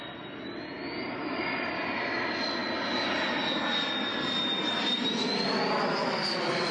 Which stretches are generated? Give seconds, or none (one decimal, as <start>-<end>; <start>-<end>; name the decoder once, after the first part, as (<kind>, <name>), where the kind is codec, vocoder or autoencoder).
none